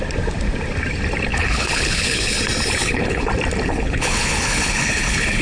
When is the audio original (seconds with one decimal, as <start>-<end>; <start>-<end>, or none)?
0.0-1.3; 2.4-2.8; 3.3-3.7